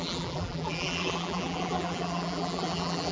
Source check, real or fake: fake